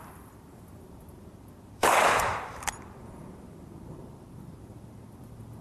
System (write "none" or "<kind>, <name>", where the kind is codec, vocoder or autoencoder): vocoder, BigVGAN v2